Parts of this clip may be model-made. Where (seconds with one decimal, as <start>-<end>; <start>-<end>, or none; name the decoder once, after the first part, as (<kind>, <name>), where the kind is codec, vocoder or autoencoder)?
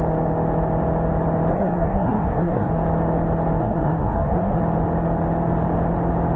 1.5-2.7 (codec, SNAC); 3.6-4.6